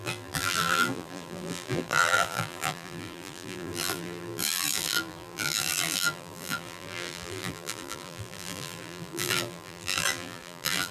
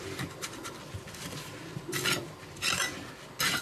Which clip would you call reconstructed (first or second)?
first